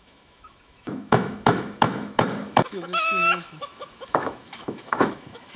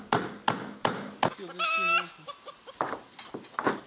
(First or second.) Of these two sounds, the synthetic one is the first